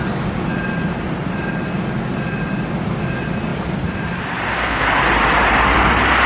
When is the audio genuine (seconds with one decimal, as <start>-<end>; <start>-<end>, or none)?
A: 0.0-6.3